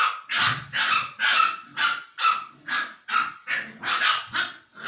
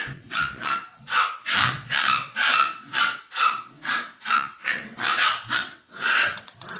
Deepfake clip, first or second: second